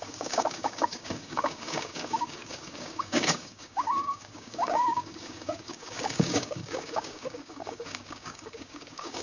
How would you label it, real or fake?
fake